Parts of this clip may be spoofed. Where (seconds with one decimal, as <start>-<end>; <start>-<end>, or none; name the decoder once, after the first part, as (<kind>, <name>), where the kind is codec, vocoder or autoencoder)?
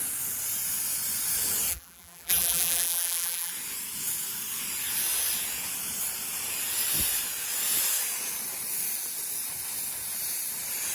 1.7-3.5 (vocoder, BigVGAN v2)